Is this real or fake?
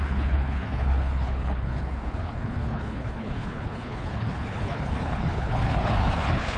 fake